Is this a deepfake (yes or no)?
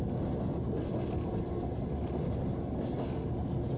no